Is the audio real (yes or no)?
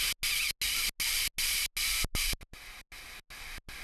yes